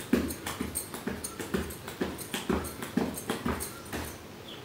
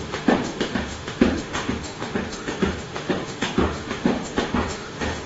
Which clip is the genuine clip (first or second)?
first